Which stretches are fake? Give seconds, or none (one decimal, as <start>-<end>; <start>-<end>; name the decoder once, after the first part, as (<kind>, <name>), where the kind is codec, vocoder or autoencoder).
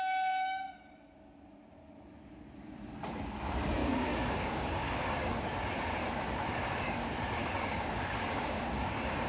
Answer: 3.8-5.4 (codec, DAC); 7.4-9.3